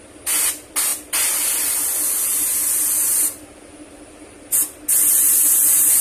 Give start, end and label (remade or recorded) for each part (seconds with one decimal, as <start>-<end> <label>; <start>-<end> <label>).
0.0-6.0 recorded

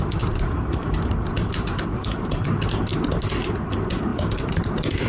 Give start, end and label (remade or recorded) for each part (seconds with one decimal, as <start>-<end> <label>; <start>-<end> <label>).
0.0-2.9 remade; 2.9-3.5 recorded; 3.5-5.1 remade

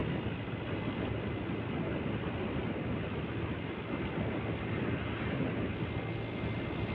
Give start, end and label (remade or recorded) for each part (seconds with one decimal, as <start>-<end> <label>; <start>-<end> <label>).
0.0-6.9 recorded

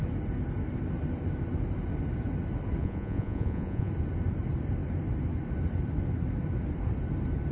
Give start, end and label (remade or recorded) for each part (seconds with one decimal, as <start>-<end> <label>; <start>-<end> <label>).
0.0-2.8 recorded; 2.8-3.9 remade; 3.9-7.5 recorded